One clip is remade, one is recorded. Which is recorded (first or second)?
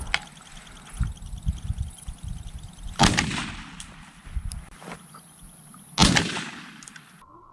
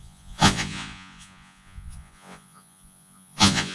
first